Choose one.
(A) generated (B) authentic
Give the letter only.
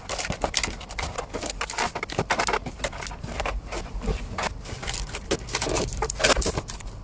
B